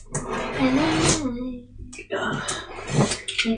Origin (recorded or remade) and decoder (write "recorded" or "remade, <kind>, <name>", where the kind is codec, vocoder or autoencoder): recorded